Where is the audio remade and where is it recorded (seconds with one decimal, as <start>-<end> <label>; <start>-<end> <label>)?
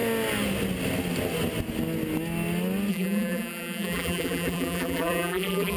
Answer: 0.0-2.9 recorded; 2.9-5.8 remade